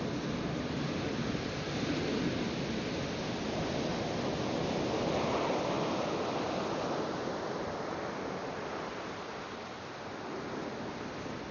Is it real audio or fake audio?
real